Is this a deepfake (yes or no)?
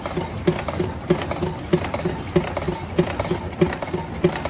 no